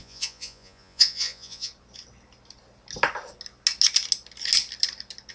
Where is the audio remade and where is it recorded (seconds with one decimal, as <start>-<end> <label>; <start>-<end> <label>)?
0.0-1.7 remade; 1.7-5.3 recorded